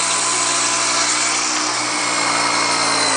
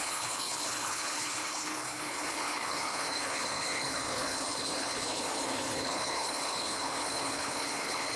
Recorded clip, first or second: first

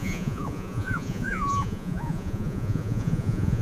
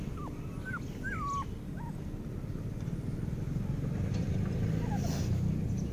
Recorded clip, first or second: second